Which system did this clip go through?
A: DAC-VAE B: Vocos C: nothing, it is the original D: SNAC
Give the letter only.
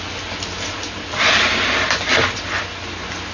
C